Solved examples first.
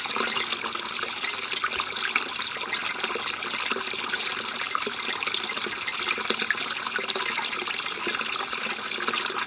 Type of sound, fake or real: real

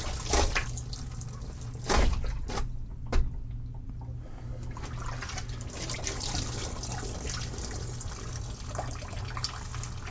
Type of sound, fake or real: real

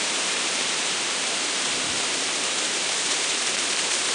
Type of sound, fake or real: fake